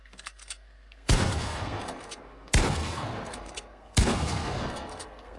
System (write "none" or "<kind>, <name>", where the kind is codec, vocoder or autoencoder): codec, SNAC